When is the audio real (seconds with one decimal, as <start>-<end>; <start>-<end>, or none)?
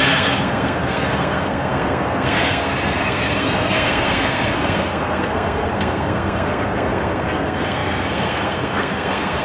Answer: none